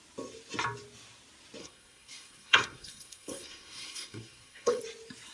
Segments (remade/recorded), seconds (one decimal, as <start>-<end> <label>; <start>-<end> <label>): 0.0-1.6 recorded; 1.6-4.8 remade; 4.8-5.3 recorded